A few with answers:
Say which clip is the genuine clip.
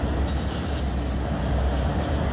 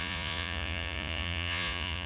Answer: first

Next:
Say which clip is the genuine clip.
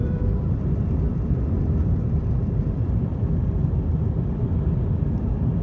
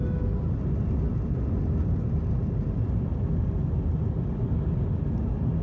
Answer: second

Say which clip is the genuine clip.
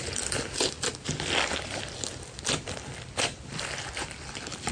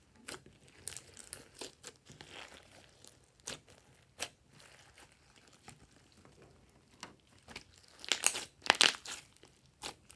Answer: second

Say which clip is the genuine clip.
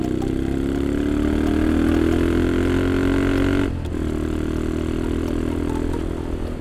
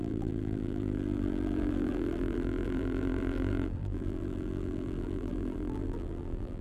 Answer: first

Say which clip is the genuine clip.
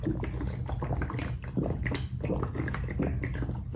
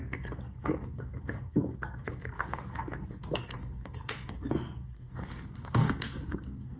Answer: first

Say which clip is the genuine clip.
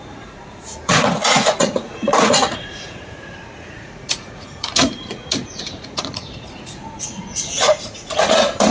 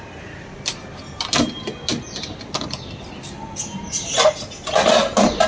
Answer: second